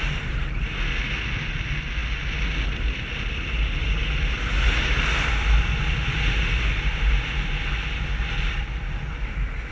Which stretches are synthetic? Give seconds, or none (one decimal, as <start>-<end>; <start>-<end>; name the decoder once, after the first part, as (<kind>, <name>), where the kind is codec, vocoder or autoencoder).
none